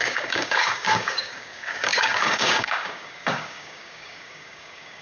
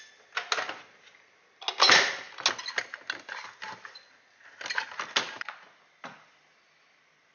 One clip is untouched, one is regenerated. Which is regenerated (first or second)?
first